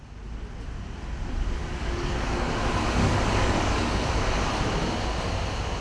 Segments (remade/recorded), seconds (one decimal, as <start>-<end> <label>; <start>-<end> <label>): 0.0-1.6 recorded; 1.6-2.5 remade; 2.5-3.0 recorded; 3.0-4.1 remade; 4.1-5.8 recorded